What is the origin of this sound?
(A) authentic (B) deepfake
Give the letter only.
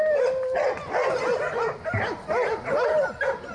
A